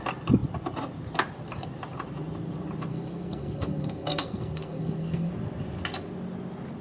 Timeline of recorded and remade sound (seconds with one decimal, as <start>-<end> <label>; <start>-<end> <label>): 0.0-2.9 recorded; 2.9-5.3 remade; 5.3-6.8 recorded